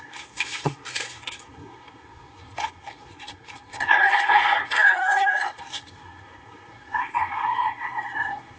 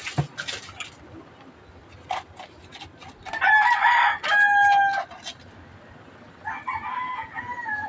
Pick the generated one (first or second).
first